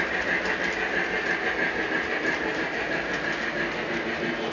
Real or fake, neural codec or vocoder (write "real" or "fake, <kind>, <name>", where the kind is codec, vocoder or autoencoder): real